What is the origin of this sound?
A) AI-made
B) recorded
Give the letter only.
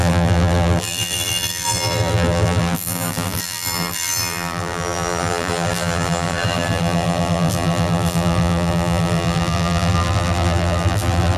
A